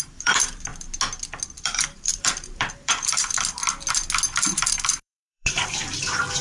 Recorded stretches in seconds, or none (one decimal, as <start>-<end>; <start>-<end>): 0.7-1.5; 3.6-4.7

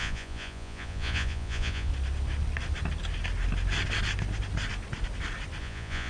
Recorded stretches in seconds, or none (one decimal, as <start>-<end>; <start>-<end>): 1.9-5.6

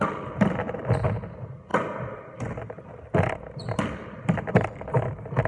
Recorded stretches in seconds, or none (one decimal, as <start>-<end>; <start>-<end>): 0.0-5.5

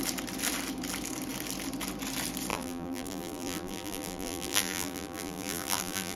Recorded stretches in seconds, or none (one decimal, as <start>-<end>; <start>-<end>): 0.0-2.5

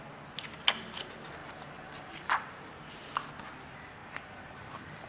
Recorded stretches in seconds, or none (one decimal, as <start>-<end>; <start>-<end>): 0.0-1.4; 2.8-4.0